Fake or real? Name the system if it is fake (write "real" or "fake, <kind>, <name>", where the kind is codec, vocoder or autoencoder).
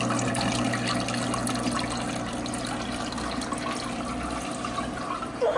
real